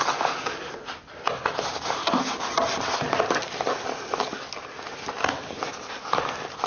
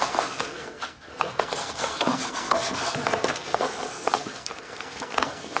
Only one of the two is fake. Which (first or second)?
second